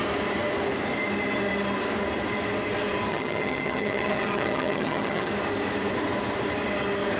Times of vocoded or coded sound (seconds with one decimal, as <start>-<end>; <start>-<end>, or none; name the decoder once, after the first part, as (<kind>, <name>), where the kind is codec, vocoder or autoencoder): 3.1-5.3 (vocoder, HiFi-GAN)